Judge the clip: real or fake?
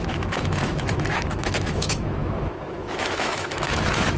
fake